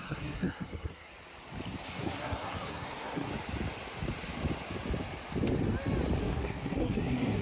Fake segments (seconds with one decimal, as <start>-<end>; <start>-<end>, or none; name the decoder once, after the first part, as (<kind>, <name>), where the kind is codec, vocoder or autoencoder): 0.0-1.1 (codec, SNAC); 1.9-3.3; 6.2-7.4